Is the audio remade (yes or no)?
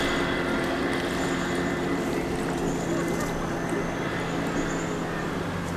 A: no